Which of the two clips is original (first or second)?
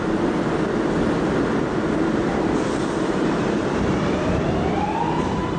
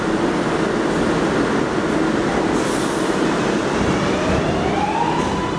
second